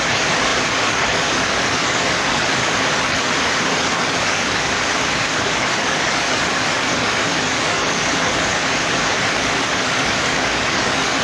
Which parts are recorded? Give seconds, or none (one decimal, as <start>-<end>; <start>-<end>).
none